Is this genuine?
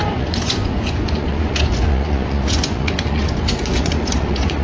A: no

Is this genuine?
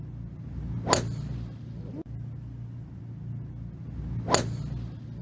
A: yes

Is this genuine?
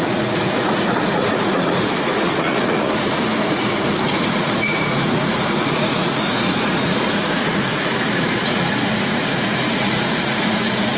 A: no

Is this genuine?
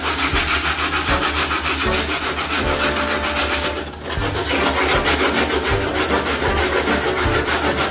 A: yes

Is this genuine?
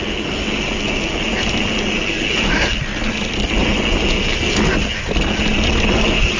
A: yes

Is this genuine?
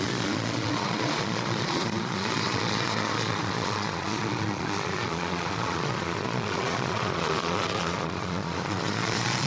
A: no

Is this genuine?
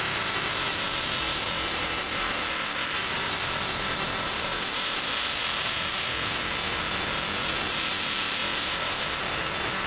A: yes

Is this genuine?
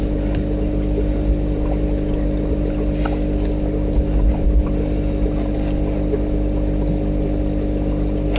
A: yes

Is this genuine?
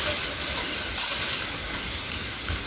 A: yes